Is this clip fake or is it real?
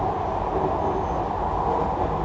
real